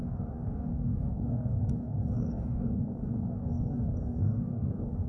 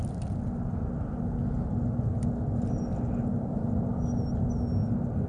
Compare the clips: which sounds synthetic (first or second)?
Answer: first